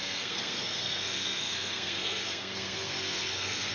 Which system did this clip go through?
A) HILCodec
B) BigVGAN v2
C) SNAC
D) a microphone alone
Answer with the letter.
C